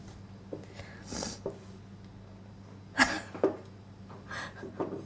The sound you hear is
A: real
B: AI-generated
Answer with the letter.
A